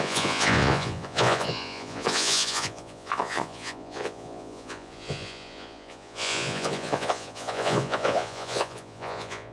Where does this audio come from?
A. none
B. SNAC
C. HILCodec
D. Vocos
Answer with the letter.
D